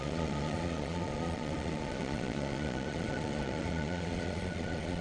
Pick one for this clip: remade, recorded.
remade